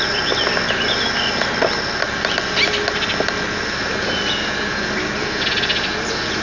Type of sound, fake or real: real